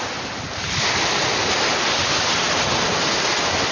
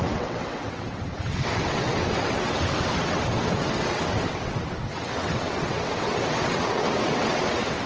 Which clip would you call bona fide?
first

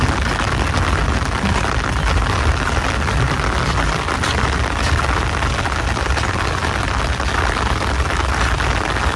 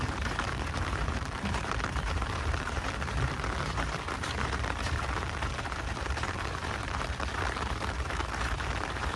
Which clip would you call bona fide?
first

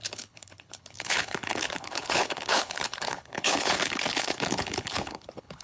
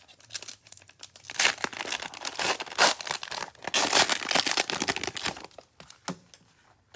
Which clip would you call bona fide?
second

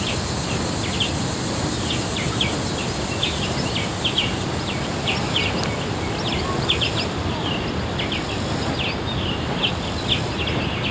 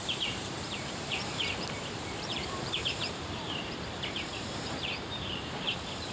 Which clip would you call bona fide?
first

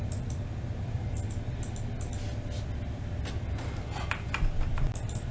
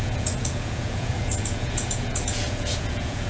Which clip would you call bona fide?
first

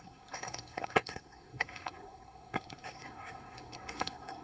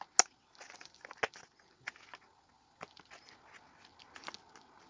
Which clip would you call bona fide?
second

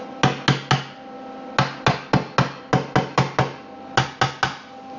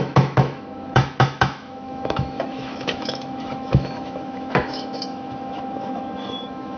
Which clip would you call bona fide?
first